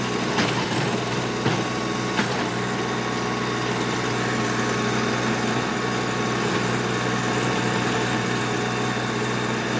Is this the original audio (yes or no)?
yes